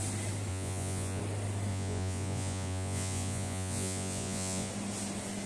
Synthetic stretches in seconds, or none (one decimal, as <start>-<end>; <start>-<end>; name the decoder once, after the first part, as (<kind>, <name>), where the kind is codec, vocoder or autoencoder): 0.5-1.2 (vocoder, Vocos); 1.7-4.7